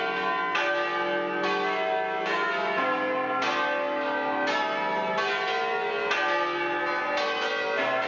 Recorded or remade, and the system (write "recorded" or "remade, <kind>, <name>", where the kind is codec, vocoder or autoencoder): recorded